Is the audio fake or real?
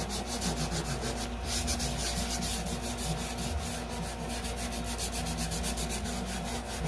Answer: real